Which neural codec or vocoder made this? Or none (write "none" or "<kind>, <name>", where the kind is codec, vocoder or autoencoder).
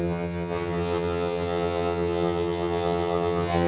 vocoder, HiFi-GAN